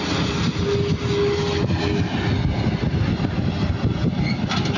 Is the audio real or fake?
real